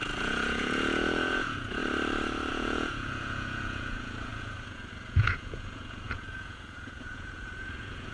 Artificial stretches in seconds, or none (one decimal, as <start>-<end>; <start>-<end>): 0.0-1.8; 2.5-8.1